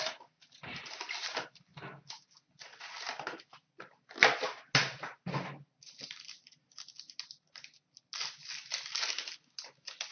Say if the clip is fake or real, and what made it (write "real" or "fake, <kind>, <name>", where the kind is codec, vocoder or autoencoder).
real